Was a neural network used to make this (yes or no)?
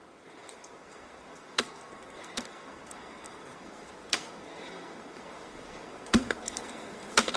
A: yes